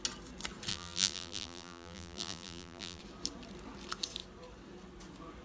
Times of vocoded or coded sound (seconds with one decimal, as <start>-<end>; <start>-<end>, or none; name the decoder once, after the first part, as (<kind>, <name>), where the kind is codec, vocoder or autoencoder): 0.7-3.0 (vocoder, BigVGAN v2)